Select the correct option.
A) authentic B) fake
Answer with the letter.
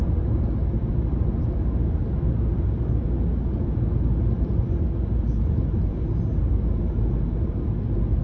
A